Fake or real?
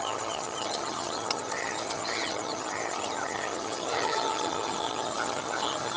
fake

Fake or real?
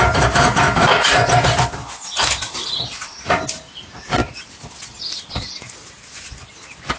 real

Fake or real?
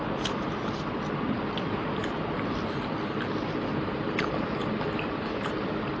real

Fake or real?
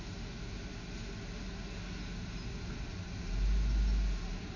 real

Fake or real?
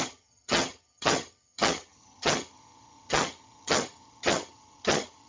fake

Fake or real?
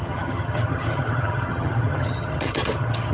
fake